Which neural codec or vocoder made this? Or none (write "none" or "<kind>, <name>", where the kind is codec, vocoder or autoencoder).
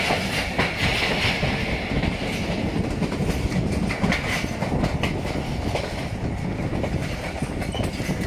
none